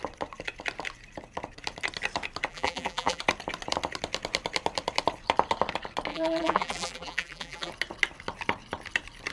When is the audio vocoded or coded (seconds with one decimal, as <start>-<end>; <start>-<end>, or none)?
2.5-3.2; 6.1-7.7